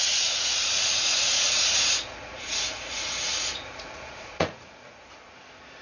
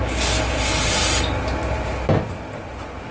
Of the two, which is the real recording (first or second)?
second